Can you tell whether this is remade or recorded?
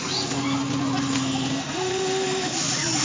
recorded